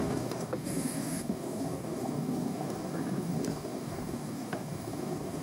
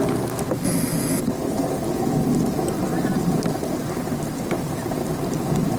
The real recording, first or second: second